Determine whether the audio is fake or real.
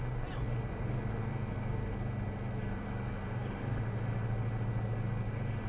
real